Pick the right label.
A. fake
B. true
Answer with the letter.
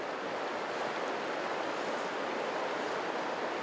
B